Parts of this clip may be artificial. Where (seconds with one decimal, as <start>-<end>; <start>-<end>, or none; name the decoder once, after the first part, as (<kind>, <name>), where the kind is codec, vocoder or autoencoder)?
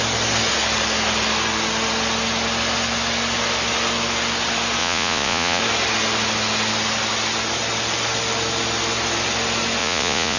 4.8-5.6 (vocoder, Vocos); 9.8-10.4